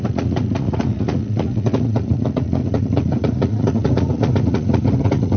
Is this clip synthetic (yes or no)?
yes